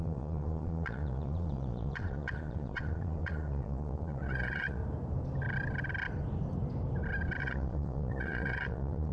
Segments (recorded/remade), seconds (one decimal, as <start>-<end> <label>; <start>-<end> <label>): 0.0-4.8 remade; 4.8-7.4 recorded; 7.4-9.1 remade